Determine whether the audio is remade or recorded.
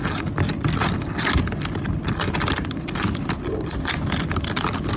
recorded